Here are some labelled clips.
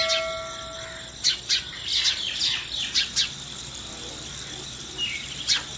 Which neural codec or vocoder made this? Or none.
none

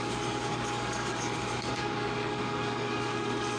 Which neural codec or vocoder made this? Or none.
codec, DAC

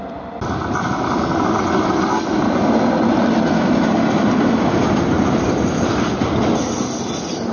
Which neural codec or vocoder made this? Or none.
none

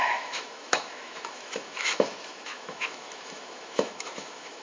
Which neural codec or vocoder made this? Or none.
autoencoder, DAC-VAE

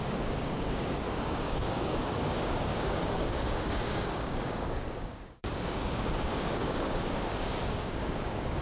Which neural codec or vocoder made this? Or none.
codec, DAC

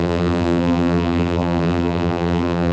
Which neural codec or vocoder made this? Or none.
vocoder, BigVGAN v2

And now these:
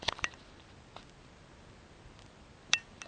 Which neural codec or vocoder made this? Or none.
none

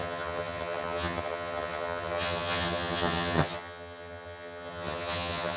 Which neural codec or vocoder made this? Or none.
vocoder, HiFi-GAN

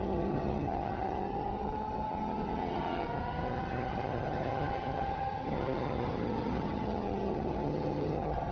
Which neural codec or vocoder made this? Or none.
vocoder, HiFi-GAN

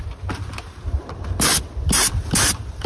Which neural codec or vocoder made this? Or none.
none